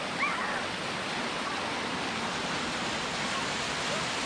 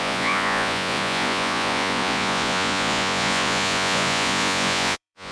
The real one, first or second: first